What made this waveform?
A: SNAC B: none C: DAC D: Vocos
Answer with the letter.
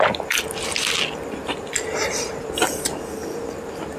B